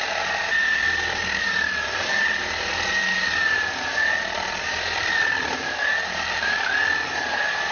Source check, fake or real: real